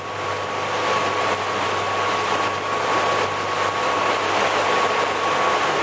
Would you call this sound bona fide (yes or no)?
yes